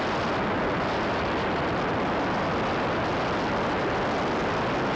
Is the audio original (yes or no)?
yes